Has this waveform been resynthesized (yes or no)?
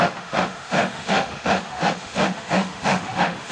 yes